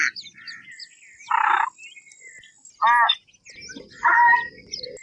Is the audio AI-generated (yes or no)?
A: no